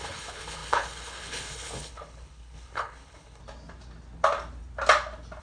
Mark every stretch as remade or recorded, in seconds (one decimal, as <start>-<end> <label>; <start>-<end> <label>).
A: 0.0-3.4 remade; 3.4-5.4 recorded